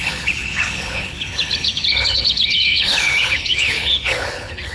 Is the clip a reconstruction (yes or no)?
yes